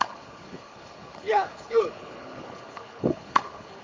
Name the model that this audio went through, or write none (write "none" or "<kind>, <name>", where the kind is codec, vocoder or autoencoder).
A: codec, HILCodec